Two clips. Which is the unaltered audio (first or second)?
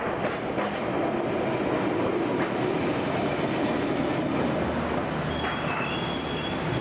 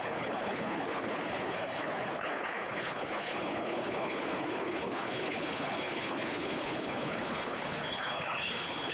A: first